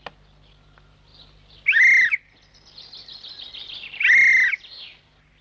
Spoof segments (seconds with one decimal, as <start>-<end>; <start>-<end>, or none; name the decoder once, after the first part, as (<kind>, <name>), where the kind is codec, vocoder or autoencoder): none